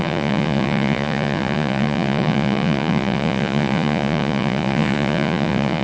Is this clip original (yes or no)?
no